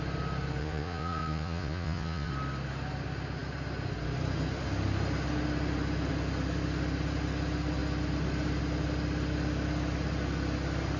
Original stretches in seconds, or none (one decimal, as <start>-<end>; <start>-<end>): 0.0-0.6; 2.3-11.0